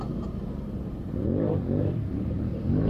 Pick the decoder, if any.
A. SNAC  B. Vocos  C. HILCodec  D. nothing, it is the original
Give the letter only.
D